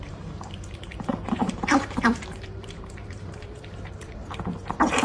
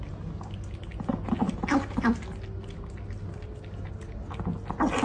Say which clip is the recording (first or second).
second